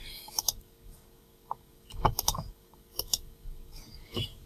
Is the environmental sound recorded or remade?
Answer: remade